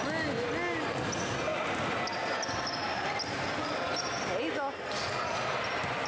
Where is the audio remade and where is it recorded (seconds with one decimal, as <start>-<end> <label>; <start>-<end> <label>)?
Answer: 0.0-6.1 recorded